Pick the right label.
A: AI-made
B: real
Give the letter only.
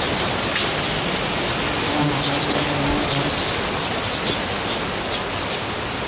B